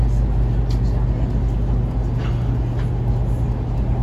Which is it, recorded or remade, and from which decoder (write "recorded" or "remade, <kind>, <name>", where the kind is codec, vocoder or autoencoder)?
recorded